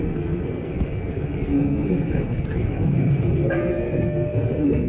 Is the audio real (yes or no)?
no